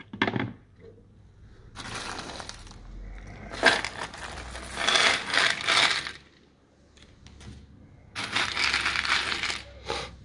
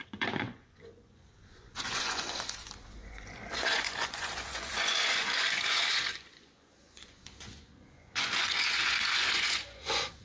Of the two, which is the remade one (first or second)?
second